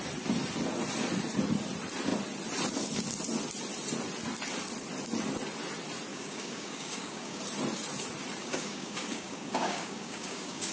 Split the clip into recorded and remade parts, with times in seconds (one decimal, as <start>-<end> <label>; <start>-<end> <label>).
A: 0.0-6.1 recorded; 6.1-7.4 remade; 7.4-8.4 recorded; 8.4-10.7 remade